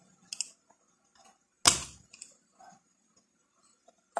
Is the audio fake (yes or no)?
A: no